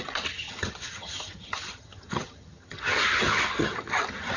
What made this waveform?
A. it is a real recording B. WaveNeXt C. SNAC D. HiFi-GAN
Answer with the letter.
D